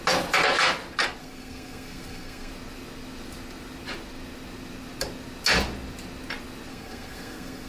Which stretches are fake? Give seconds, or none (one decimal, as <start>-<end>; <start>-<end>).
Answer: 1.2-2.5; 6.7-7.7